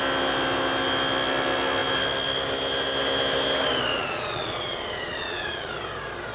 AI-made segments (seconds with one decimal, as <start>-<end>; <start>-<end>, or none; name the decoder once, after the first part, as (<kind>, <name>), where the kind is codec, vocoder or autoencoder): 3.9-5.7 (vocoder, Vocos)